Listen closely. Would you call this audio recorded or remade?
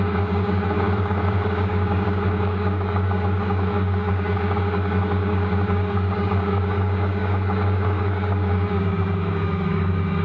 remade